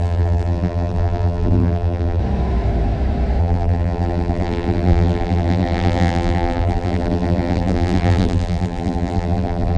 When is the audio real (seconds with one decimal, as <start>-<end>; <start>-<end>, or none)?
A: 2.2-3.4